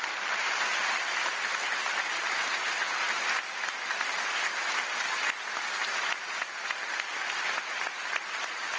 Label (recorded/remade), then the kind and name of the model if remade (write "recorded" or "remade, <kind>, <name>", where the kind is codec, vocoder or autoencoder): recorded